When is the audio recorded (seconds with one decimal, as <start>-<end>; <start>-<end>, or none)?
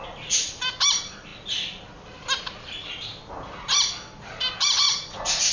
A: 0.0-5.5